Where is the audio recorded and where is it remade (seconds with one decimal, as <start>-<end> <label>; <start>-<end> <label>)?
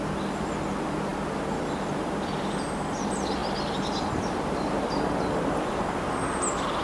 0.0-6.8 recorded